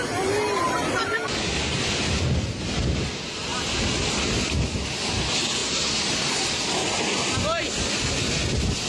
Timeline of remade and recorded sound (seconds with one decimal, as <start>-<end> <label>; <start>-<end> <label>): 0.0-8.9 recorded